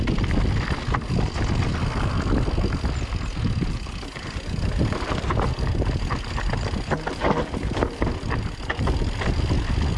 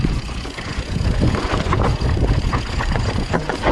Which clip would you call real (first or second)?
first